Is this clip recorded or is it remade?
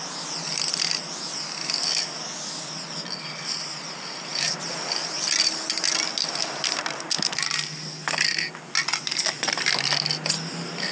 recorded